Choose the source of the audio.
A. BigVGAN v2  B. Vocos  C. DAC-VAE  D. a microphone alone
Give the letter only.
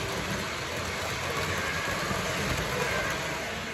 D